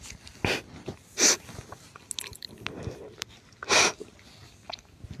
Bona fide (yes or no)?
yes